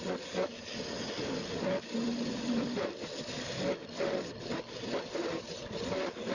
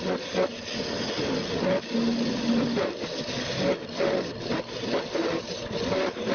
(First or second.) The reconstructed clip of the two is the first